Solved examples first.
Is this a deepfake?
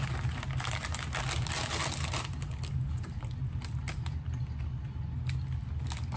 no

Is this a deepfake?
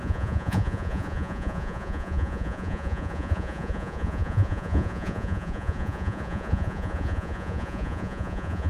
yes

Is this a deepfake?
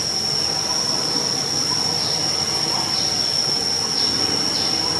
no